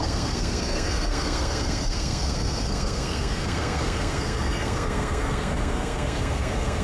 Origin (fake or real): fake